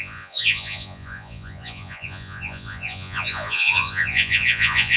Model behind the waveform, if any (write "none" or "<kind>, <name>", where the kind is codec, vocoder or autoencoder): vocoder, Vocos